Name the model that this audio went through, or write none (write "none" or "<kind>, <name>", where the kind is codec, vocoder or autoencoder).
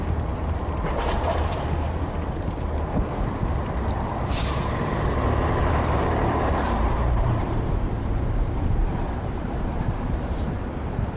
vocoder, BigVGAN v2